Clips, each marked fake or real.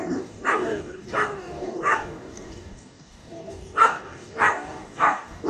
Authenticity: fake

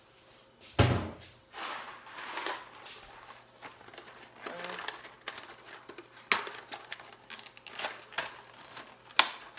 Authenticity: real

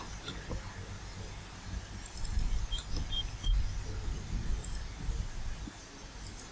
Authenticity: real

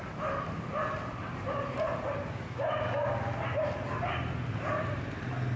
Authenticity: real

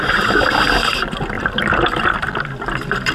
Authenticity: real